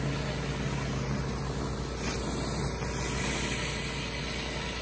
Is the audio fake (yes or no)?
no